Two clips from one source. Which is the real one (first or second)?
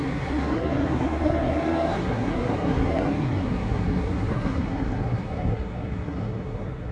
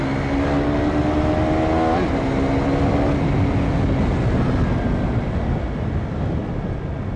second